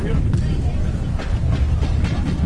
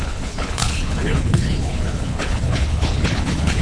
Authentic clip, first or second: first